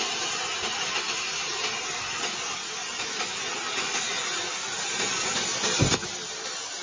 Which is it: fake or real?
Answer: real